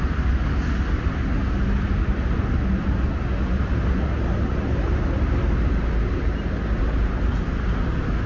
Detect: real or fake real